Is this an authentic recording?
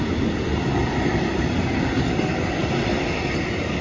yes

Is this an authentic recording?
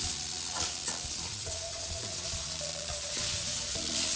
no